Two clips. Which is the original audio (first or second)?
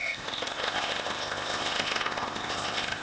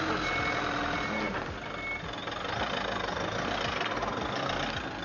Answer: second